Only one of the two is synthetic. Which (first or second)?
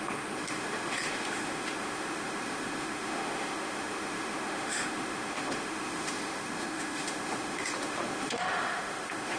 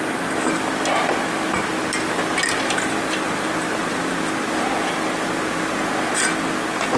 first